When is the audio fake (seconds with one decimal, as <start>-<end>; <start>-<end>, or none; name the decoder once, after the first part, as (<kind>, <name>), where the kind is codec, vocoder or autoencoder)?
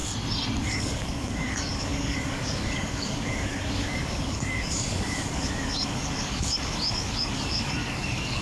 0.6-8.4 (codec, DAC)